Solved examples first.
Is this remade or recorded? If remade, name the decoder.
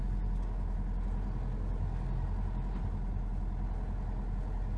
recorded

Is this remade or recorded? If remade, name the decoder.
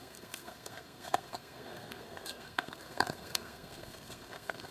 remade, codec, SNAC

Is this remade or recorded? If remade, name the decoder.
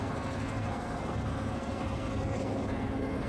remade, codec, SNAC